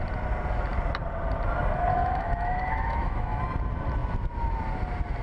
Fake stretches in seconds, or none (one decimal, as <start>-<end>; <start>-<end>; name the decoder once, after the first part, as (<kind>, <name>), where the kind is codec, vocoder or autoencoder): 1.9-3.4 (autoencoder, DAC-VAE)